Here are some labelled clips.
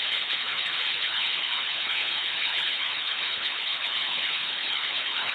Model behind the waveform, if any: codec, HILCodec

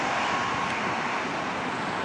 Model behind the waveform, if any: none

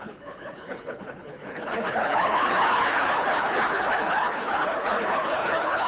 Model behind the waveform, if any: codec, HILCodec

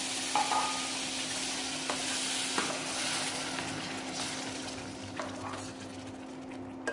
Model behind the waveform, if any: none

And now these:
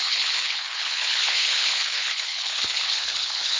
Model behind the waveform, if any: codec, HILCodec